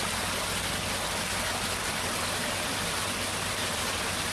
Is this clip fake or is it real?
real